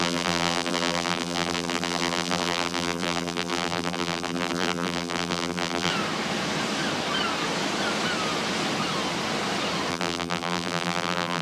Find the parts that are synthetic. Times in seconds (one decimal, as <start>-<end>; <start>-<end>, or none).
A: 0.0-5.9; 9.9-11.4